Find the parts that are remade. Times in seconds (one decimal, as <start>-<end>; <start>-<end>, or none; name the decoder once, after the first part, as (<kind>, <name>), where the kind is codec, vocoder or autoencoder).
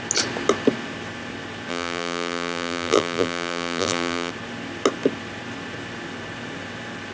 1.7-4.3 (vocoder, BigVGAN v2)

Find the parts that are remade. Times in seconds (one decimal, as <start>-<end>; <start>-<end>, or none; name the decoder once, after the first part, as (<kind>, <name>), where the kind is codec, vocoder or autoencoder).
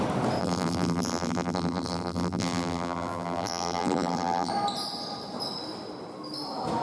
0.4-4.5 (vocoder, BigVGAN v2)